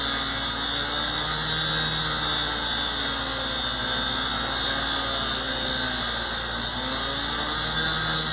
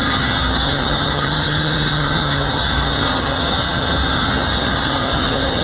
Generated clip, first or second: second